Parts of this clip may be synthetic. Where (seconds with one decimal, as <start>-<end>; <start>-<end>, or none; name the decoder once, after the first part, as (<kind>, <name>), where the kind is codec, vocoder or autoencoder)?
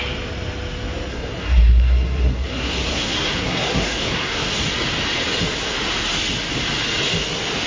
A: 1.1-4.5 (codec, SNAC)